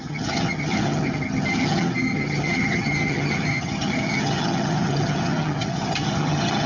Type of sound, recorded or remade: remade